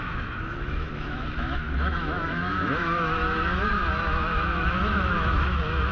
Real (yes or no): no